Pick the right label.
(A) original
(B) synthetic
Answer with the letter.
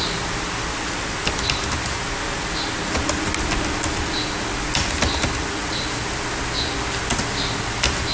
A